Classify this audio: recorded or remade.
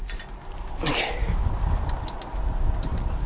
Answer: recorded